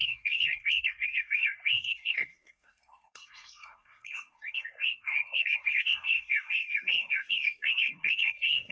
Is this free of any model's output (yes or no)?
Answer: no